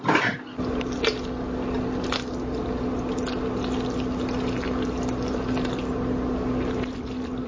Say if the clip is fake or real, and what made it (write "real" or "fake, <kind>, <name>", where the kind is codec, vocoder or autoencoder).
real